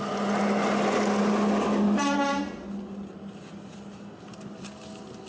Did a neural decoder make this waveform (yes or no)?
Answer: no